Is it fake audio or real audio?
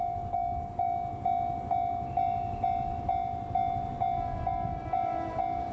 real